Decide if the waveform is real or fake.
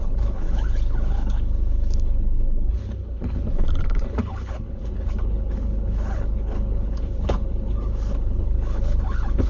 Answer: fake